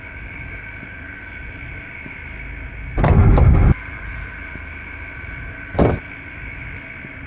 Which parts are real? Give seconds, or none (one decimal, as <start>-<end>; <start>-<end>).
0.0-7.3